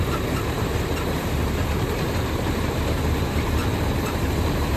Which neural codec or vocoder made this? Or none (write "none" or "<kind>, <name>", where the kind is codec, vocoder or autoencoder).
vocoder, BigVGAN v2